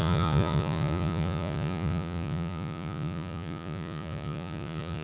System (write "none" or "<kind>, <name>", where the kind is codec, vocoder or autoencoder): vocoder, Vocos